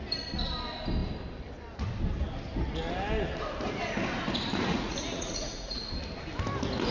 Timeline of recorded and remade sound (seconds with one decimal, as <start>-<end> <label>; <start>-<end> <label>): 0.0-4.7 recorded; 4.7-5.9 remade; 5.9-6.9 recorded